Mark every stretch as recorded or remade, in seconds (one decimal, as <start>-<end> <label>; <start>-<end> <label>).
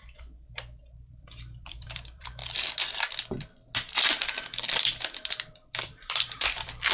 0.0-0.8 recorded; 0.8-2.4 remade; 2.4-4.8 recorded; 4.8-6.9 remade